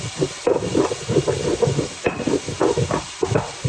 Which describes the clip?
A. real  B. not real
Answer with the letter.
A